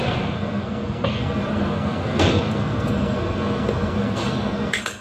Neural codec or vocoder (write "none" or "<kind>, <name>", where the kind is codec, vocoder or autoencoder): codec, SNAC